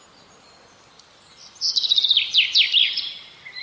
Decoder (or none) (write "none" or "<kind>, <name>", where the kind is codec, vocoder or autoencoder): none